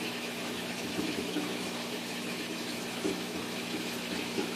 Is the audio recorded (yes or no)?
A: no